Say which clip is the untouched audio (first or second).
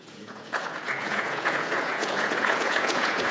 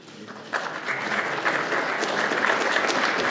second